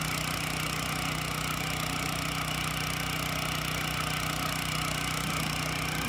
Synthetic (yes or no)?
no